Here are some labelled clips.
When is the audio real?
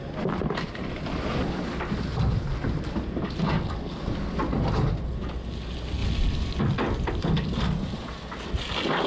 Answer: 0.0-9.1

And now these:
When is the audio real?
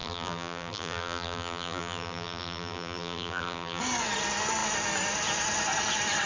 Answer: 3.8-6.3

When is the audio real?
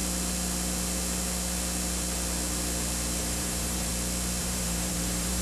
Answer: 0.0-3.2; 3.9-4.4